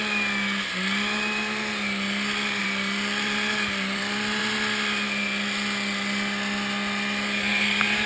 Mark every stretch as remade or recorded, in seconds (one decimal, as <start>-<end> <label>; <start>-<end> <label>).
0.0-2.6 recorded; 2.6-4.4 remade; 4.4-8.1 recorded